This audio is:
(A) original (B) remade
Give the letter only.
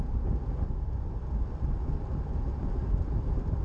A